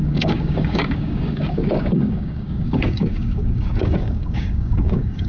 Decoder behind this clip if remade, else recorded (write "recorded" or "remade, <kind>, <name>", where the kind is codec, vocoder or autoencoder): remade, codec, DAC